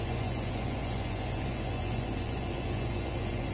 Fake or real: fake